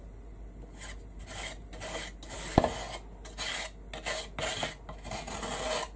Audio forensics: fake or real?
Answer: real